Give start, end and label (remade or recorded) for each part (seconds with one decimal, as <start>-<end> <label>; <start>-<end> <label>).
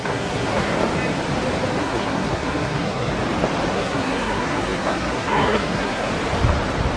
0.0-0.7 remade; 0.7-1.8 recorded; 1.8-3.1 remade; 3.1-3.7 recorded; 3.7-6.1 remade; 6.1-7.0 recorded